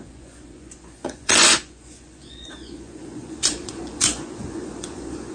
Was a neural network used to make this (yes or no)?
yes